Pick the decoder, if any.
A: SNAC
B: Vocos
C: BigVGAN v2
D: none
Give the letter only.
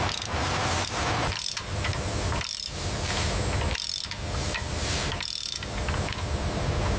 D